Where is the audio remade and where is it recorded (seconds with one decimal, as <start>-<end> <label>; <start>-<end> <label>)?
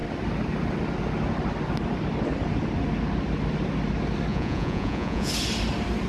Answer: 0.0-4.3 recorded; 4.3-5.3 remade; 5.3-6.1 recorded